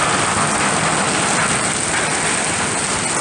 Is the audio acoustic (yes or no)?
yes